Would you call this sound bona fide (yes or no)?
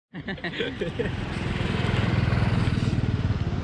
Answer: yes